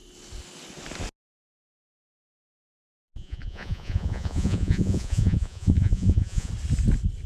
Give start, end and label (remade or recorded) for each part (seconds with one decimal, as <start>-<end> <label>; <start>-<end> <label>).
0.0-2.3 recorded; 2.3-6.5 remade; 6.5-7.3 recorded